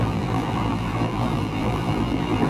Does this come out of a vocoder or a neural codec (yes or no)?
yes